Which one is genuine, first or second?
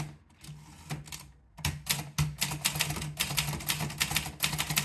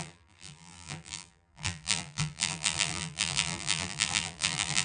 first